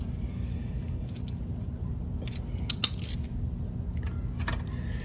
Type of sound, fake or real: real